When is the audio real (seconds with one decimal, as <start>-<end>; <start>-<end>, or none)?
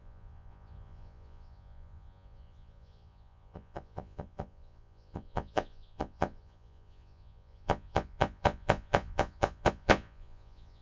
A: none